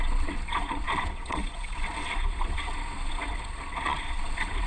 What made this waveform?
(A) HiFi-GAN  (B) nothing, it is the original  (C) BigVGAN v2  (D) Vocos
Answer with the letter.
D